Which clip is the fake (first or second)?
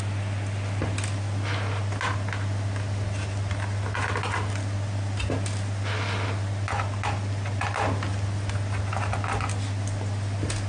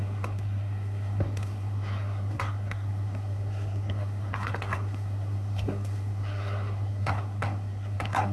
second